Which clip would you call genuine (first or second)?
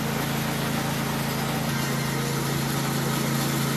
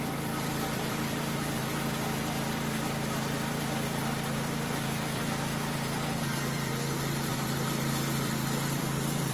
first